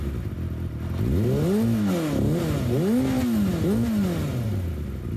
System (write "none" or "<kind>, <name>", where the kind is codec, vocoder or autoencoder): none